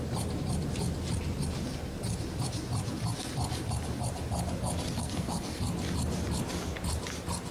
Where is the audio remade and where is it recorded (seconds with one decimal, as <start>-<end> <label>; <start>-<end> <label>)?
0.0-5.0 recorded; 5.0-5.6 remade; 5.6-7.5 recorded